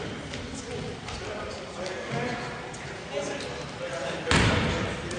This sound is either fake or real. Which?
real